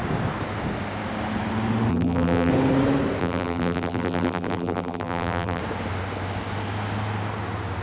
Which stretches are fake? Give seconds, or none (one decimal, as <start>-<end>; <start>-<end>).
1.9-2.5; 3.2-5.6